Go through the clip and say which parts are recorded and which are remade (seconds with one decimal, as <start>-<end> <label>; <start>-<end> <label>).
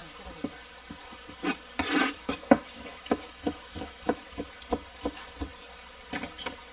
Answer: 0.0-2.0 recorded; 2.0-4.2 remade; 4.2-6.7 recorded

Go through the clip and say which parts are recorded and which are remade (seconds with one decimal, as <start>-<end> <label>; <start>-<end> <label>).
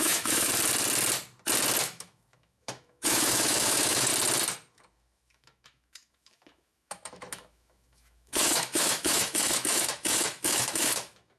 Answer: 0.0-0.5 remade; 0.5-1.8 recorded; 1.8-4.1 remade; 4.1-4.7 recorded; 4.7-11.4 remade